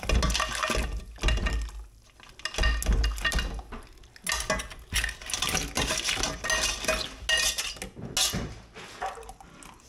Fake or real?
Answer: real